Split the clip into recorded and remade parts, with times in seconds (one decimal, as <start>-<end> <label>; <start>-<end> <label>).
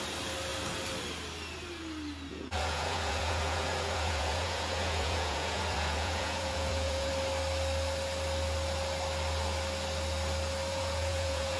0.0-2.3 recorded; 2.3-7.1 remade; 7.1-10.7 recorded; 10.7-11.6 remade